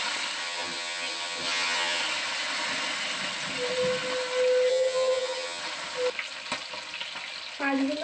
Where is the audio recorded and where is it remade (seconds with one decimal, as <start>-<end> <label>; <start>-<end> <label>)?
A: 0.0-0.4 recorded; 0.4-2.0 remade; 2.0-4.7 recorded; 4.7-5.6 remade; 5.6-8.0 recorded